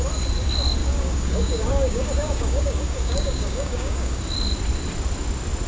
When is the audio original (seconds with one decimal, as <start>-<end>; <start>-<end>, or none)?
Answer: 0.0-0.8; 4.2-5.7